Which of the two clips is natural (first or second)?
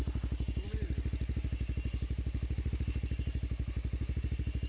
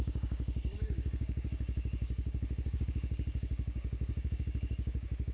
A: first